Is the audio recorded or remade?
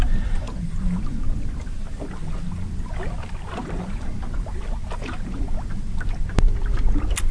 recorded